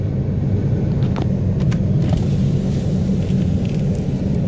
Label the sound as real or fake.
real